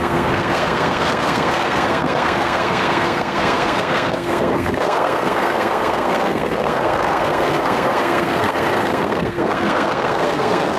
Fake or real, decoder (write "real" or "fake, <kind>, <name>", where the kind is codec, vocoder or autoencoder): fake, codec, SNAC